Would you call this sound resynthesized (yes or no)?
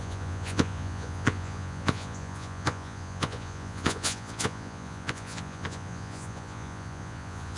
yes